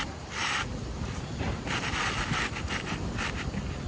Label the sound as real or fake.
real